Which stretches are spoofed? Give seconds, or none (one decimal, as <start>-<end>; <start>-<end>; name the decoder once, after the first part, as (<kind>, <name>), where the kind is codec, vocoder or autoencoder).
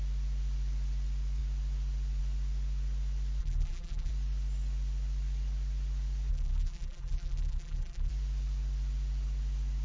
3.4-4.1 (vocoder, BigVGAN v2); 6.3-8.1